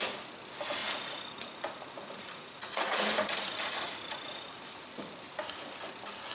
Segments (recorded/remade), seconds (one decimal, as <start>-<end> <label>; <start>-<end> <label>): 0.0-0.8 recorded; 0.8-4.6 remade; 4.6-6.3 recorded